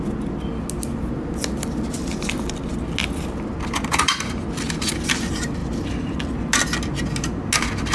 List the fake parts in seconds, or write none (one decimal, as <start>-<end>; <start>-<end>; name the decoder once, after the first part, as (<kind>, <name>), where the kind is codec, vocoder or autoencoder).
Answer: none